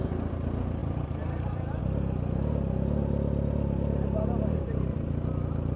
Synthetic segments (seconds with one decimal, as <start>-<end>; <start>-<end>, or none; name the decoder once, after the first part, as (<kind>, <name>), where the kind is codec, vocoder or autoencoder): 0.8-1.8 (vocoder, BigVGAN v2)

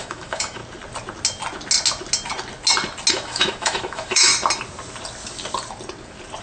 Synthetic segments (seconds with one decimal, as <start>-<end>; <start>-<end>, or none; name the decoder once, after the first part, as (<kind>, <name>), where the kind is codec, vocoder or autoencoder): 0.0-0.6 (autoencoder, DAC-VAE); 3.1-4.3